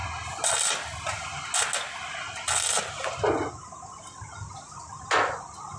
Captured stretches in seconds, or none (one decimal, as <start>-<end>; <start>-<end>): 0.0-5.8